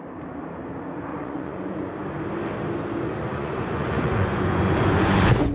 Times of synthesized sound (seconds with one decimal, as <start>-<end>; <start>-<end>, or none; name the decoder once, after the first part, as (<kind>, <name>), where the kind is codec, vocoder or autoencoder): 1.1-1.9 (vocoder, Vocos); 3.2-5.5